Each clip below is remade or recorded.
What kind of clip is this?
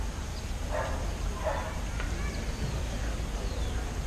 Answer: recorded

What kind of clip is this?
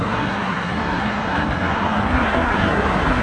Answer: remade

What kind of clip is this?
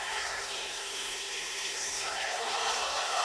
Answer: remade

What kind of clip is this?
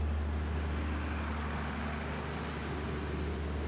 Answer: recorded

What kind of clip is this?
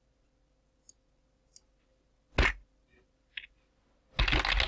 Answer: recorded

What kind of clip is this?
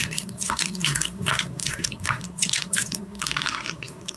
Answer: remade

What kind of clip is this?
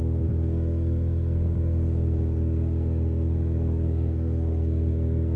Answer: remade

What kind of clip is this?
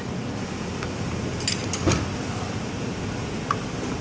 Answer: recorded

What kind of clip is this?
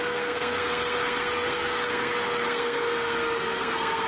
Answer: remade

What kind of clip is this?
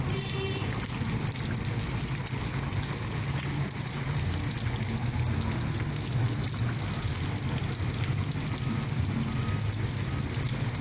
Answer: recorded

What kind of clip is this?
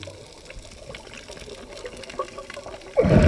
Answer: recorded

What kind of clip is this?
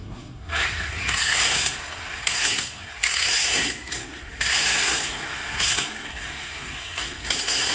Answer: remade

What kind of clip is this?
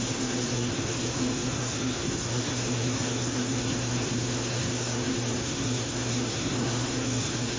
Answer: remade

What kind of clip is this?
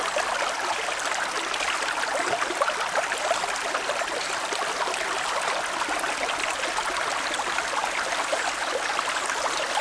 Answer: recorded